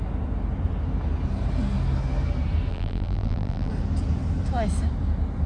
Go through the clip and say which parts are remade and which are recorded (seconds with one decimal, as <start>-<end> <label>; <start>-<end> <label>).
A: 0.0-2.7 recorded; 2.7-3.7 remade; 3.7-5.5 recorded